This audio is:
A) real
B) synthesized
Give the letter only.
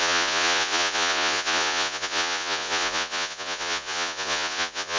B